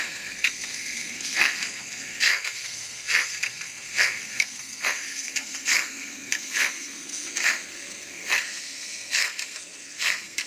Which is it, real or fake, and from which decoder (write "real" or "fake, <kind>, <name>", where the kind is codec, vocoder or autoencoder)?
fake, codec, SNAC